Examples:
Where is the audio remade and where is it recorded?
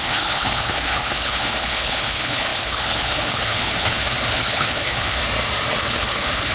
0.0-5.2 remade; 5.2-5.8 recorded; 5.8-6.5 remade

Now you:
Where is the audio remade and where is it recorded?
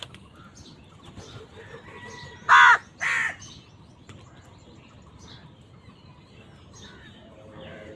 0.0-8.0 recorded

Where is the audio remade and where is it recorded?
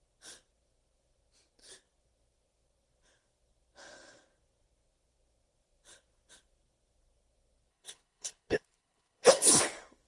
0.0-7.7 recorded; 7.7-9.6 remade; 9.6-10.1 recorded